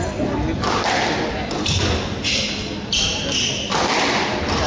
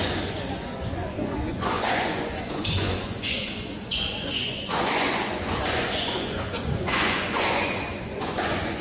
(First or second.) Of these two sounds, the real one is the first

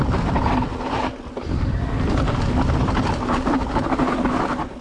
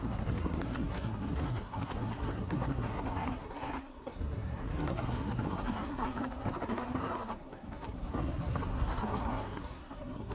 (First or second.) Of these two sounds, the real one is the first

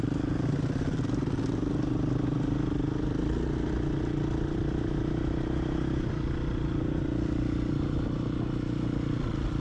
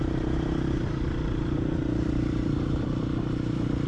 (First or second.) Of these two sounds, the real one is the first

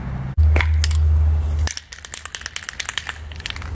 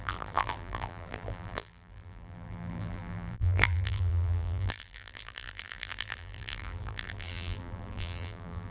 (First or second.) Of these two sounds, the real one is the first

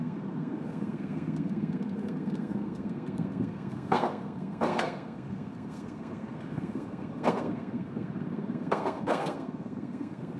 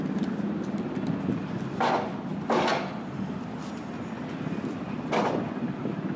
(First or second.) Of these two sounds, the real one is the second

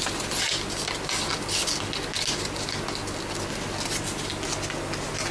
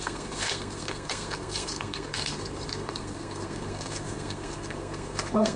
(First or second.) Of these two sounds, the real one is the first